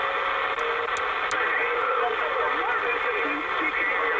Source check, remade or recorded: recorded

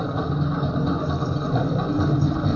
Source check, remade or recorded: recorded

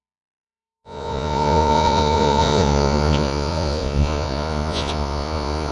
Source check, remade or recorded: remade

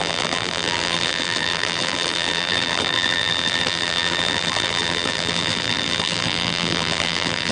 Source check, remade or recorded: remade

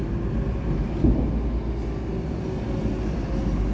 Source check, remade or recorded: recorded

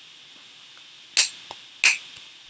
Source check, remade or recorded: recorded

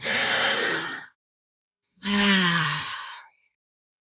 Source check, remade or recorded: remade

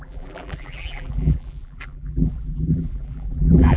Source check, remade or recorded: remade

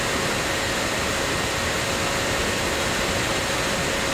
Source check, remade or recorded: recorded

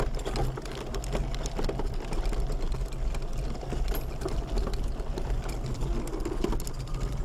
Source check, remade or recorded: recorded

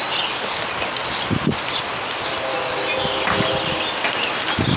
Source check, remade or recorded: recorded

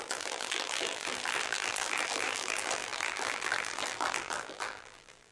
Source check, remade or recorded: remade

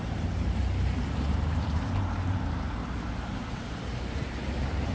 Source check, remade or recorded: remade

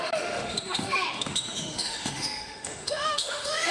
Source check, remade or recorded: remade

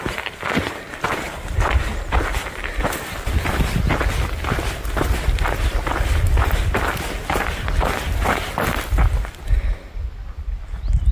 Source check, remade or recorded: remade